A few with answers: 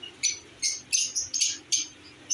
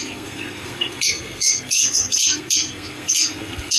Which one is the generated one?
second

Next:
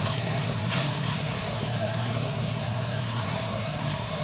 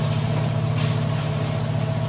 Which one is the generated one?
first